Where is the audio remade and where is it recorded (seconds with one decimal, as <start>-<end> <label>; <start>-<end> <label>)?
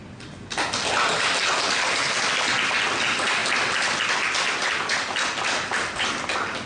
0.0-6.7 recorded